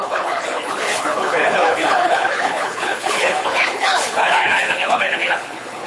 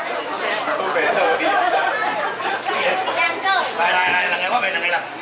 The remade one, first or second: first